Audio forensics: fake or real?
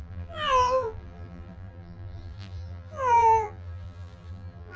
fake